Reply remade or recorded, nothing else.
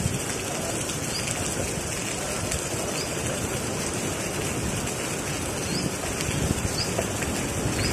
recorded